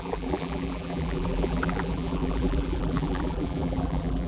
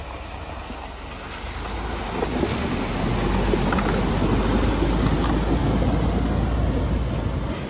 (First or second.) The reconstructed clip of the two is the first